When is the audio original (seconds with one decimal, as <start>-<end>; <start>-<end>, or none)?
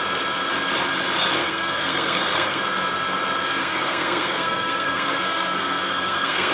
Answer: 0.0-1.4; 2.6-3.6